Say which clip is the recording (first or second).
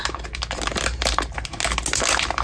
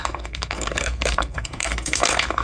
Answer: first